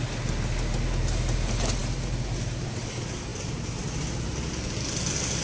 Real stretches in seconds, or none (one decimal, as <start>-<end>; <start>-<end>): 0.0-5.4